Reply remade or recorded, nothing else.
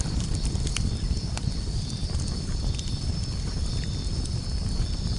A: remade